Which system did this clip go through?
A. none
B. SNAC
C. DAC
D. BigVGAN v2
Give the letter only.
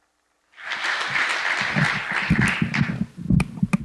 A